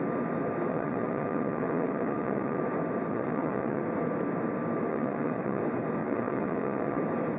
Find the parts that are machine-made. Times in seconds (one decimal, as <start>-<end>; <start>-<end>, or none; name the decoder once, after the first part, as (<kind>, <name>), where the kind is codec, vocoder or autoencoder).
0.7-2.6 (vocoder, Vocos); 3.1-3.8; 4.9-5.6; 6.0-7.0

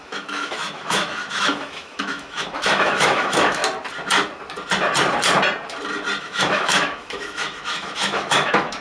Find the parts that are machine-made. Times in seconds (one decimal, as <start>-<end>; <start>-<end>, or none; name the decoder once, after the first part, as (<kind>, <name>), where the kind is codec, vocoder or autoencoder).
0.0-3.6 (autoencoder, DAC-VAE); 6.2-8.8

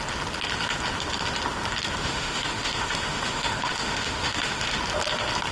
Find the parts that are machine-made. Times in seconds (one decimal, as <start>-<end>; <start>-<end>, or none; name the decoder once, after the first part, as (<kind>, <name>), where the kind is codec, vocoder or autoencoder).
2.0-4.8 (autoencoder, DAC-VAE)